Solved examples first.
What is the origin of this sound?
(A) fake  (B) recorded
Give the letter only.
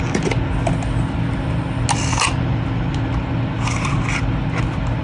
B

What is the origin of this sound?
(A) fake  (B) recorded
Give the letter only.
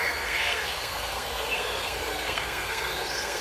A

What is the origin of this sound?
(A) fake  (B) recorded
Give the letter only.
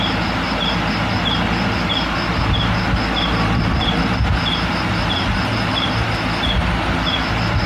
B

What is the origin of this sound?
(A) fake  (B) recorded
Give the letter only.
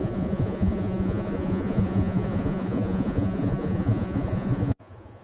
A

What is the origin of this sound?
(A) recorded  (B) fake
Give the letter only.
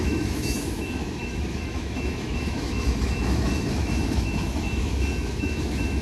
B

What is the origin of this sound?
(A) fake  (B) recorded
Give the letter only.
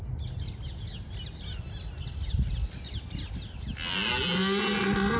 B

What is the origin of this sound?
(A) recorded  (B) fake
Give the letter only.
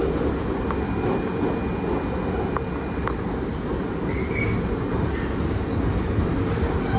A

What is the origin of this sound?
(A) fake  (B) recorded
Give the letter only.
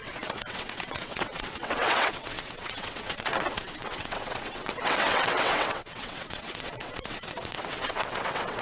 A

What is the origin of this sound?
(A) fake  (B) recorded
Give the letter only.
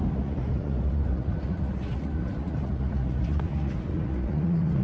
A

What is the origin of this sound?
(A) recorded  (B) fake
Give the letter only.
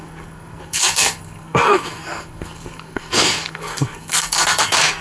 B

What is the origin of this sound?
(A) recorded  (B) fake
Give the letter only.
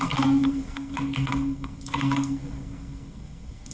B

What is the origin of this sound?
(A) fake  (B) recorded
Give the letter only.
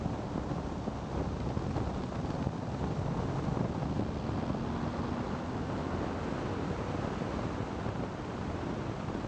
B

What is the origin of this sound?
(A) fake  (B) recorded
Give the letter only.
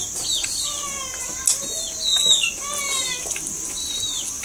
B